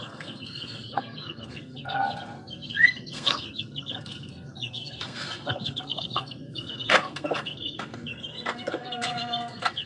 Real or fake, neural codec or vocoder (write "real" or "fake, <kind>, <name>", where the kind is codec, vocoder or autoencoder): fake, codec, SNAC